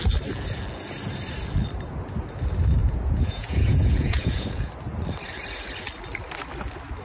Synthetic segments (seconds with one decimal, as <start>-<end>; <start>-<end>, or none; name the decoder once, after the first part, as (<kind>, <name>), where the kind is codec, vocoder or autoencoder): 2.8-4.7 (vocoder, Vocos)